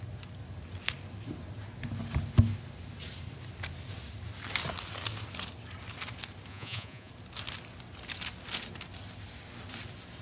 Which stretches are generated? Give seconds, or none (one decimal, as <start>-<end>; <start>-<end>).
6.5-7.1